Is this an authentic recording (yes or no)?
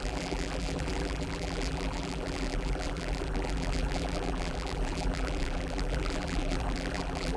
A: no